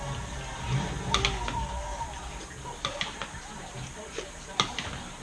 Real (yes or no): yes